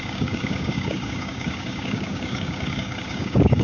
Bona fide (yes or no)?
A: no